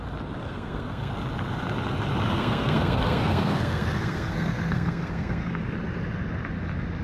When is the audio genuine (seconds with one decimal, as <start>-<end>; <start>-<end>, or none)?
0.0-0.4; 1.1-2.3; 5.6-7.0